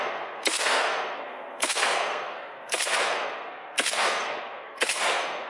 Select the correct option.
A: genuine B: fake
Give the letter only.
B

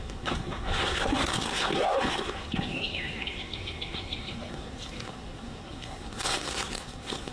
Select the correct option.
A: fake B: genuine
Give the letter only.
A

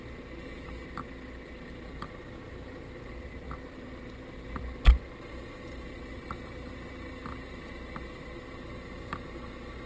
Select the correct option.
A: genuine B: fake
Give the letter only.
A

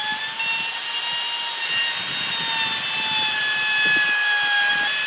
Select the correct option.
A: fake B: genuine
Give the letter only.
B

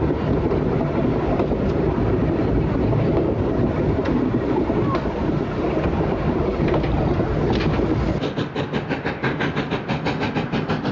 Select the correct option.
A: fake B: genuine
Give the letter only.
B